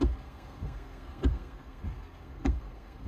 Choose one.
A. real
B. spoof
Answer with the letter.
B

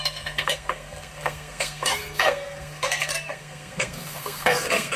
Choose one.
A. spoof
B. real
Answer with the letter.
A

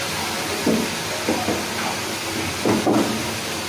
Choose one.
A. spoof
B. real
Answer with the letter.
B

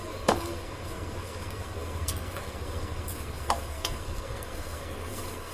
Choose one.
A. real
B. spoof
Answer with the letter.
B